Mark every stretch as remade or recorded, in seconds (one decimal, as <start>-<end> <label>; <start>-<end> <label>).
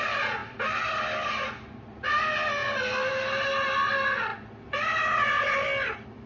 0.0-6.3 recorded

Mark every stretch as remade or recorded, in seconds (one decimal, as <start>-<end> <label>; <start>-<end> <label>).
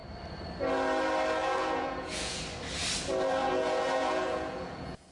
0.0-1.4 recorded; 1.4-2.4 remade; 2.4-3.4 recorded; 3.4-5.1 remade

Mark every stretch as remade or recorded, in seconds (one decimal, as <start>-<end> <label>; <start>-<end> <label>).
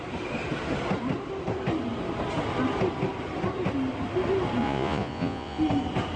0.0-4.6 recorded; 4.6-5.6 remade; 5.6-6.2 recorded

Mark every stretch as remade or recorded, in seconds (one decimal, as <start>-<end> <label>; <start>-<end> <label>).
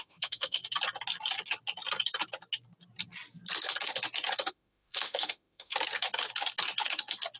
0.0-0.6 remade; 0.6-4.5 recorded; 4.5-5.7 remade; 5.7-7.4 recorded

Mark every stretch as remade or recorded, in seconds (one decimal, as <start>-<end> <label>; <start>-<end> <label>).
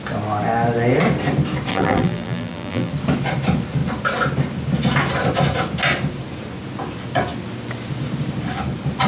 0.0-1.7 recorded; 1.7-2.9 remade; 2.9-9.1 recorded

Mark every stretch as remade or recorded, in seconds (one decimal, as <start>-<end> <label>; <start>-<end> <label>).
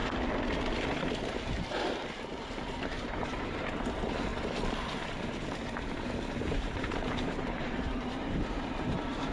0.0-2.5 recorded; 2.5-9.3 remade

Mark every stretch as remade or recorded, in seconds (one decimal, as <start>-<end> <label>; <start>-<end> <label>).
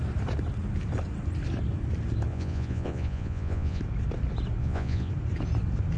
0.0-2.3 recorded; 2.3-3.8 remade; 3.8-4.6 recorded; 4.6-5.1 remade; 5.1-6.0 recorded